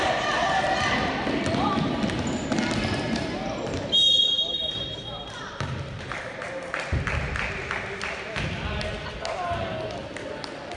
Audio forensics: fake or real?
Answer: real